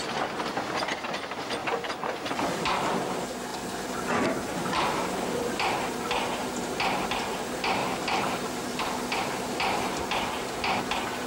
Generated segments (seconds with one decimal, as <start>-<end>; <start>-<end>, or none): 1.6-2.7; 7.8-9.0